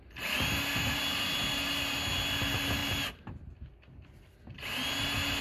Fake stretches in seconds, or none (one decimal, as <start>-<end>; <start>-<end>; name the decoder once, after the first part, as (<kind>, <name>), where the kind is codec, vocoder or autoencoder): none